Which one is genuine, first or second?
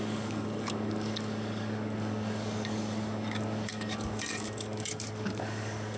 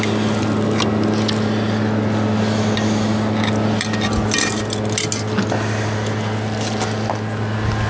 second